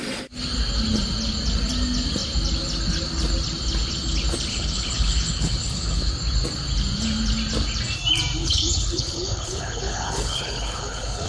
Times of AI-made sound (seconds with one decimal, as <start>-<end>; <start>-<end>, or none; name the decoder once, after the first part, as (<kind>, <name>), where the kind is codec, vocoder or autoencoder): 4.5-6.1 (codec, HILCodec); 8.4-11.3